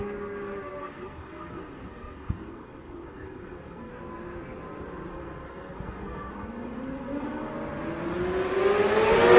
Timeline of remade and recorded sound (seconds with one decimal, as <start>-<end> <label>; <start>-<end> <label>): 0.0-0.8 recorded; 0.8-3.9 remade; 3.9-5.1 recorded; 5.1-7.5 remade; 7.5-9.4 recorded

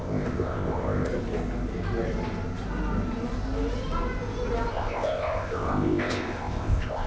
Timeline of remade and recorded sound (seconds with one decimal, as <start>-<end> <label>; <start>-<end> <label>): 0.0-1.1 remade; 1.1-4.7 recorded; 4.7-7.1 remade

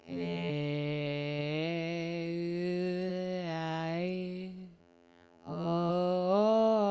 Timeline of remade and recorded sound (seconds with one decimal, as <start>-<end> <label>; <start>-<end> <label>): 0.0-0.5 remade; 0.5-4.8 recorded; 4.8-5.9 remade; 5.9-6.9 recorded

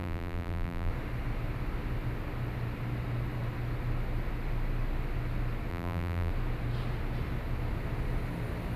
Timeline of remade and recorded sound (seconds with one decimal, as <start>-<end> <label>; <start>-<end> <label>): 0.0-0.9 remade; 0.9-5.7 recorded; 5.7-6.3 remade; 6.3-8.8 recorded

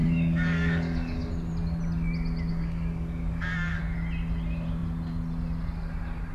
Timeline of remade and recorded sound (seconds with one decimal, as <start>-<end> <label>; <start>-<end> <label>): 0.0-1.3 remade; 1.3-2.5 recorded; 2.5-3.8 remade; 3.8-6.3 recorded

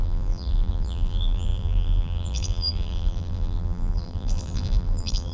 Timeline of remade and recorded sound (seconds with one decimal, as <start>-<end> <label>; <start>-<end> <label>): 0.0-5.3 remade